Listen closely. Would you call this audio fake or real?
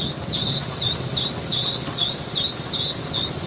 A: real